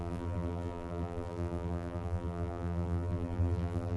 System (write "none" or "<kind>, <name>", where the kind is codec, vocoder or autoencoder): vocoder, BigVGAN v2